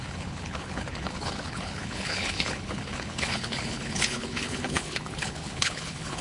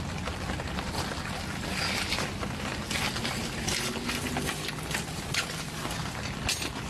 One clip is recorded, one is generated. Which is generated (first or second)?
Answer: first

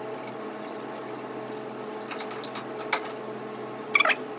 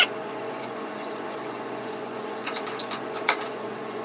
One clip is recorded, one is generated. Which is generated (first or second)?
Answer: second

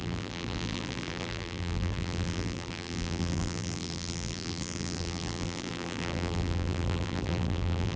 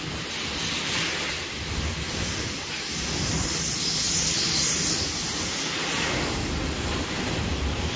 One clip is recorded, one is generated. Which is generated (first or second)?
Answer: first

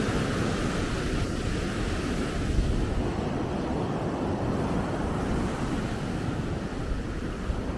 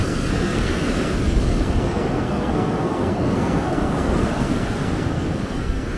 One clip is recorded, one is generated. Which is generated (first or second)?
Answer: second